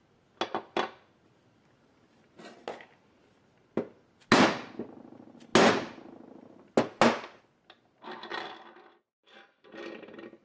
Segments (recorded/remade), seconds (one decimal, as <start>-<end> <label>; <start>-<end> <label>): 0.0-10.4 recorded